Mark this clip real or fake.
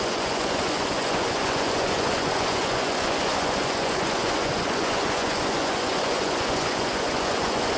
fake